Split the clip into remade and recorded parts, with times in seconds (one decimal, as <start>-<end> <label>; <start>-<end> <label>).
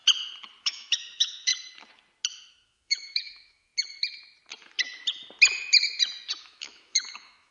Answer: 0.0-0.6 recorded; 0.6-1.5 remade; 1.5-2.5 recorded; 2.5-3.7 remade; 3.7-6.4 recorded; 6.4-7.5 remade